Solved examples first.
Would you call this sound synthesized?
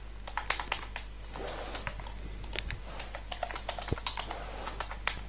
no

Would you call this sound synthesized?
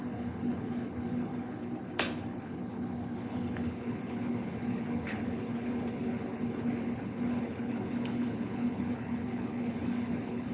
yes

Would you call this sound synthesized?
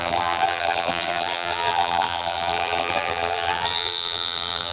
yes